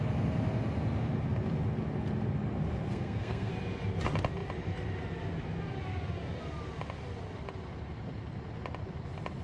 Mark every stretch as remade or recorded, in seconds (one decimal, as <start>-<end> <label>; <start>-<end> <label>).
0.0-2.9 recorded; 2.9-3.5 remade; 3.5-9.4 recorded